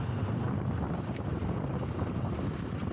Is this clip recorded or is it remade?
remade